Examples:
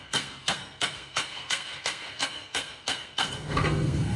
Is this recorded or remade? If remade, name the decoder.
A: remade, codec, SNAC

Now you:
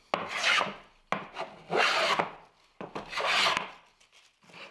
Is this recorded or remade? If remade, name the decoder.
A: recorded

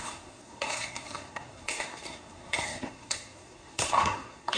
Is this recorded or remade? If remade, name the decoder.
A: remade, codec, SNAC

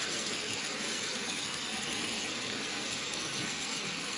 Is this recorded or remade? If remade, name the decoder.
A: remade, codec, SNAC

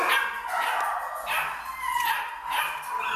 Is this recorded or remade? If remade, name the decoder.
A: recorded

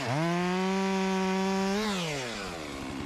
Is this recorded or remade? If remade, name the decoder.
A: recorded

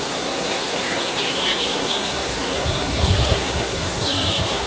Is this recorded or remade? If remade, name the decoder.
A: remade, codec, SNAC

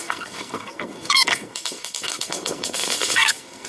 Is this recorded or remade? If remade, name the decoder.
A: remade, codec, SNAC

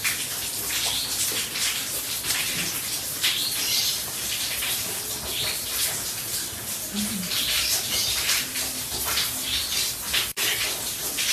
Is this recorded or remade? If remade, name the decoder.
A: recorded